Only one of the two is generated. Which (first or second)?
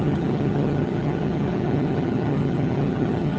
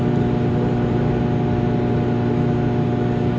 first